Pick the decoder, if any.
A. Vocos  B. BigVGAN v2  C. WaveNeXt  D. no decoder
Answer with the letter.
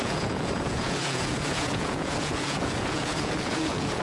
A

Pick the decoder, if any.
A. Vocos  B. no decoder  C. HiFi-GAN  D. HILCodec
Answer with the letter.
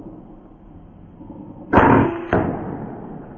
B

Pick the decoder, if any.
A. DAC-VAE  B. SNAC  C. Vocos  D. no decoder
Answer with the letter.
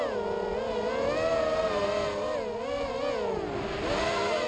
D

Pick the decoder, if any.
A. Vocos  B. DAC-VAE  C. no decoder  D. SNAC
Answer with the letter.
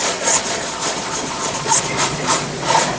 A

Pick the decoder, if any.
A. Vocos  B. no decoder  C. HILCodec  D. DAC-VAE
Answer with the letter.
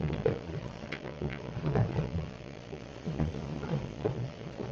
A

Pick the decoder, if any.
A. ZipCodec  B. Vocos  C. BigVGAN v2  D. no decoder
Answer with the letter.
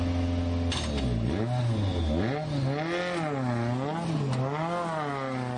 D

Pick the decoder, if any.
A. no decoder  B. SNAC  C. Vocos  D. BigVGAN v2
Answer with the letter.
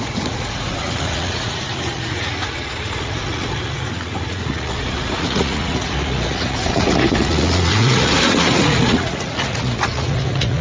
C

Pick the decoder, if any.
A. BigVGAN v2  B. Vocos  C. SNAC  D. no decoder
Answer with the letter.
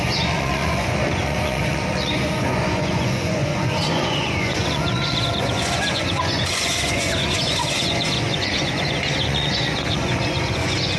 B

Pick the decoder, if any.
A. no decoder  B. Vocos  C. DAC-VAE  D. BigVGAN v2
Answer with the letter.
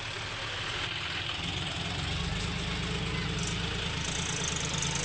A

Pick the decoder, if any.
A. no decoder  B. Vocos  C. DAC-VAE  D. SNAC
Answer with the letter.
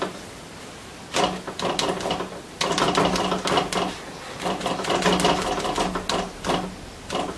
A